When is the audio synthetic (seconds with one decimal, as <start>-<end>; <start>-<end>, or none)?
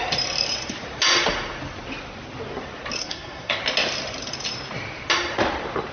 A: 3.0-3.6